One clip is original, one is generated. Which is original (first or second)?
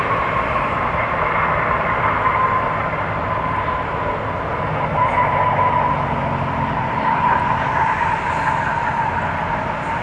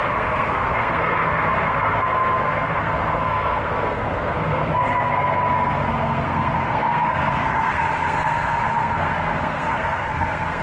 first